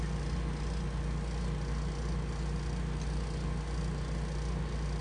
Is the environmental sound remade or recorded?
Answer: recorded